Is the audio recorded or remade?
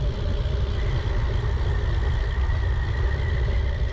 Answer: recorded